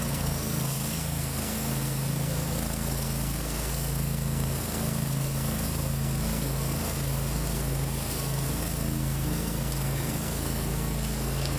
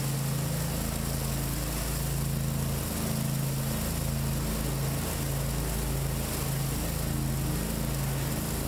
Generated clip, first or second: first